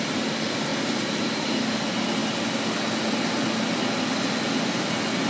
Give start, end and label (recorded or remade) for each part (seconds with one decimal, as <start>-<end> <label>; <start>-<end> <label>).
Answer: 0.0-0.7 recorded; 0.7-1.7 remade; 1.7-5.3 recorded